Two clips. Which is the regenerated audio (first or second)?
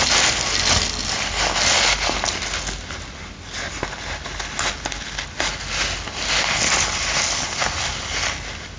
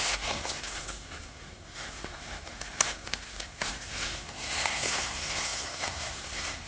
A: second